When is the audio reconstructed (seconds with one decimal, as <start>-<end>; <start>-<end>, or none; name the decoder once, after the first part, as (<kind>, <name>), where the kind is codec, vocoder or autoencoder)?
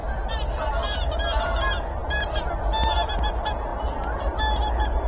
none